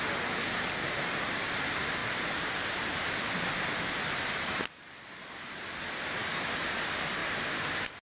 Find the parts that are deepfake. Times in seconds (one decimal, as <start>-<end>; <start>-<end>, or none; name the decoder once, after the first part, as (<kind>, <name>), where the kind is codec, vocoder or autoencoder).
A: 0.8-1.4 (vocoder, BigVGAN v2); 2.0-4.6